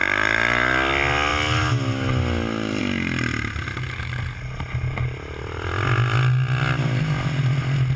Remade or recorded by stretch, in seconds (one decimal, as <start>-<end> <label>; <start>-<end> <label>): 0.0-8.0 recorded